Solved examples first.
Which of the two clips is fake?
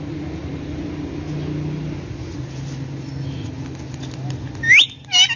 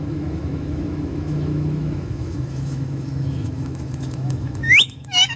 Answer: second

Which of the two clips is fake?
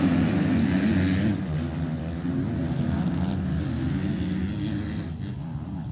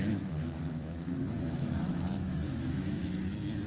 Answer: second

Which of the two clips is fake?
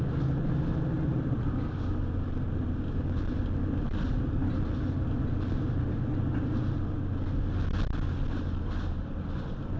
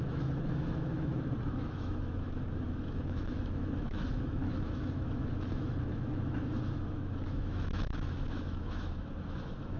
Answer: second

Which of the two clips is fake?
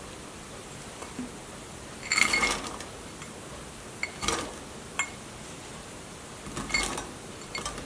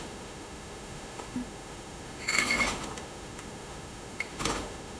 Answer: second